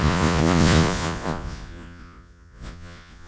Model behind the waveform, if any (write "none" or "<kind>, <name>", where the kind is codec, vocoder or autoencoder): vocoder, Vocos